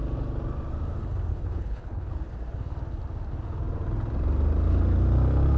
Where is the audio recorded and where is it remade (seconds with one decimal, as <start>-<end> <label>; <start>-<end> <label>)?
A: 0.0-1.3 recorded; 1.3-2.1 remade; 2.1-5.6 recorded